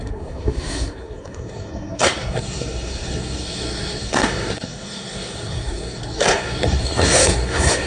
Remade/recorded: remade